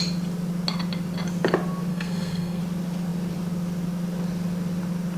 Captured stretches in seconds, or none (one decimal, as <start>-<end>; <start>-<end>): 0.0-1.9; 2.6-5.2

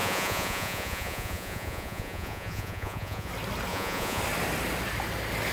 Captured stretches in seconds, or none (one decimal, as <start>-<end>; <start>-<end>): 3.3-3.7; 4.2-5.5

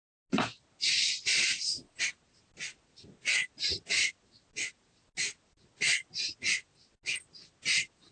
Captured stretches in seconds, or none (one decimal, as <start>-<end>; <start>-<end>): 0.0-1.3; 2.1-8.1

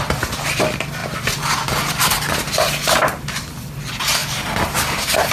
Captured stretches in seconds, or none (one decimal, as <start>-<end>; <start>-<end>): 0.0-4.2

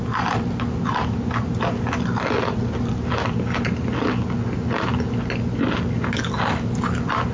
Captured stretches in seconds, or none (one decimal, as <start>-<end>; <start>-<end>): 0.0-7.3

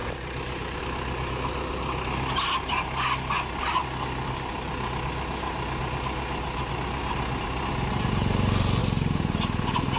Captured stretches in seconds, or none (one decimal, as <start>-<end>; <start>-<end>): 0.8-10.0

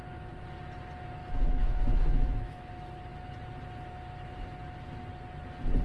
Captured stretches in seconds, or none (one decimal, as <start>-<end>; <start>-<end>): 0.0-1.2; 2.7-5.8